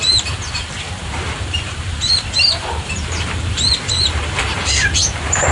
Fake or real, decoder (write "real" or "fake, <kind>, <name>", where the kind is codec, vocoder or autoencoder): fake, vocoder, BigVGAN v2